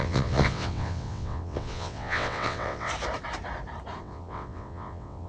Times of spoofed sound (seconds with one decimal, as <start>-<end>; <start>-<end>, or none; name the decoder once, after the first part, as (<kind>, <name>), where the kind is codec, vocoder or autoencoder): 0.0-2.9 (vocoder, WaveNeXt); 4.0-5.3